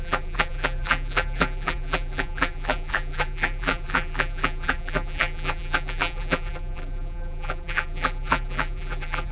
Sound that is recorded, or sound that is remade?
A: remade